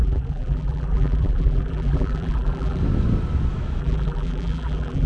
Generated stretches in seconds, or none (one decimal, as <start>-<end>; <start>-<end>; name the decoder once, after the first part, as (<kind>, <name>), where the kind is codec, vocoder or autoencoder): 0.0-2.8 (vocoder, BigVGAN v2); 3.8-5.1